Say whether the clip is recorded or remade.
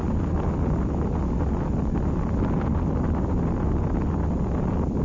recorded